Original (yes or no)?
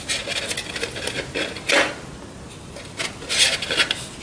yes